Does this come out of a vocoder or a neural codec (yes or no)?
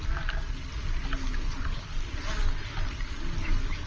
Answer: no